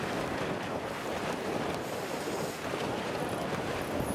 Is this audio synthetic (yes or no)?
no